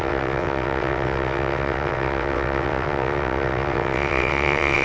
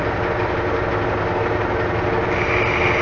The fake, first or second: first